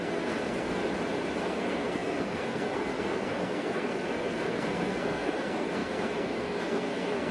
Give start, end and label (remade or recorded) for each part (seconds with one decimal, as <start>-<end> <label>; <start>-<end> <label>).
0.0-0.8 remade; 0.8-1.4 recorded; 1.4-7.3 remade

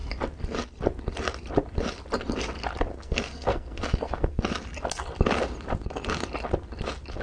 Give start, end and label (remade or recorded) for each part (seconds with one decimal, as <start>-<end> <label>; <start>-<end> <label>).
0.0-2.9 recorded; 2.9-4.4 remade; 4.4-7.2 recorded

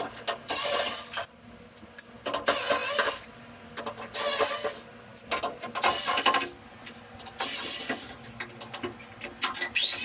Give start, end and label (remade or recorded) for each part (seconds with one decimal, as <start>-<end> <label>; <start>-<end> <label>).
0.0-10.0 recorded

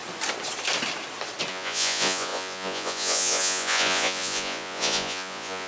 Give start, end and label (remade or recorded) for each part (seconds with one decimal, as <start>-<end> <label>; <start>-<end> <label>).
0.0-1.5 recorded; 1.5-5.7 remade

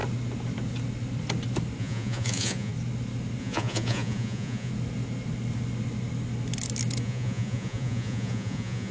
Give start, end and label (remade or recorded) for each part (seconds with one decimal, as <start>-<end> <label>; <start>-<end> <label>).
0.0-1.8 recorded; 1.8-2.7 remade; 2.7-3.4 recorded; 3.4-4.7 remade; 4.7-7.0 recorded; 7.0-8.9 remade